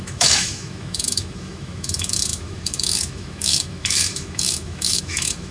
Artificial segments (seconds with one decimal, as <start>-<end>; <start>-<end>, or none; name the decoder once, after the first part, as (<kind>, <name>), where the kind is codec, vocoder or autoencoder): 0.0-5.5 (autoencoder, DAC-VAE)